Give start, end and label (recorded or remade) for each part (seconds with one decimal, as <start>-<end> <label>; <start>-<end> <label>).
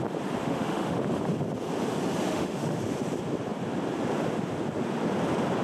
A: 0.0-0.4 recorded; 0.4-1.0 remade; 1.0-2.3 recorded; 2.3-2.8 remade; 2.8-5.6 recorded